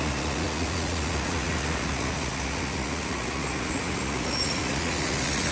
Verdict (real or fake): fake